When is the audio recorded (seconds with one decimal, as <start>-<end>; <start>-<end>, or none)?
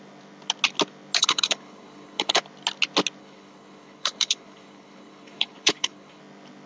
0.0-1.2; 2.4-3.2; 6.2-6.7